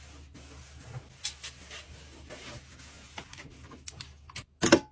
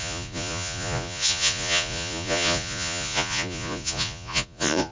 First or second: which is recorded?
first